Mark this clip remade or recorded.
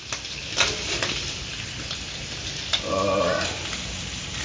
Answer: recorded